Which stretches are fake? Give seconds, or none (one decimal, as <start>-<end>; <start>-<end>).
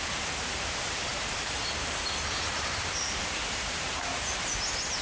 1.1-4.1